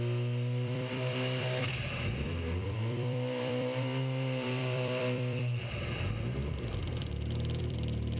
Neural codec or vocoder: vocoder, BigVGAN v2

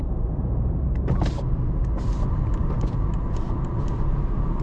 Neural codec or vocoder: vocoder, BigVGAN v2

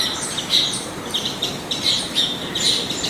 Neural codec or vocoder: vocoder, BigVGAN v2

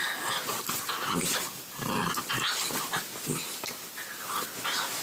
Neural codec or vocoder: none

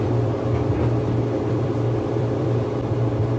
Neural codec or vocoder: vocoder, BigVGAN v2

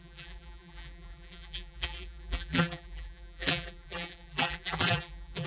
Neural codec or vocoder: vocoder, BigVGAN v2